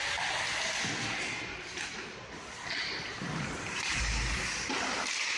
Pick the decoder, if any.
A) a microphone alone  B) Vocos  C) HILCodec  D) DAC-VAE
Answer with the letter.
A